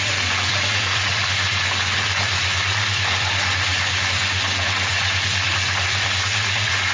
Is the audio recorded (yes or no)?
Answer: no